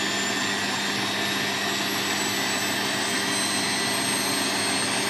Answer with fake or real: real